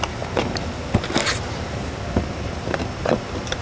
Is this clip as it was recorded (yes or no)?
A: no